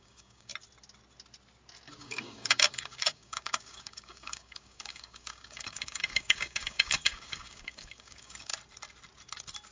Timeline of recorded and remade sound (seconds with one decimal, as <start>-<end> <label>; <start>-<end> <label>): 0.0-0.5 remade; 0.5-2.0 recorded; 2.0-8.5 remade; 8.5-9.7 recorded